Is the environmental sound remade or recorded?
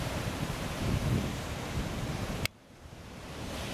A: remade